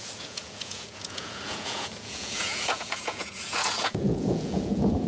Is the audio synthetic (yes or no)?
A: yes